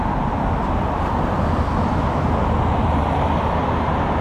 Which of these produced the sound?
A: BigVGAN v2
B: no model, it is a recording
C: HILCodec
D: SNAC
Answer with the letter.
B